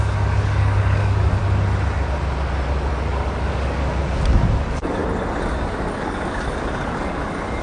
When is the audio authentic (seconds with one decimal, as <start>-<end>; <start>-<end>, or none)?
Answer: 1.4-2.9; 5.0-5.5